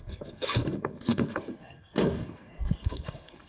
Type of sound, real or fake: fake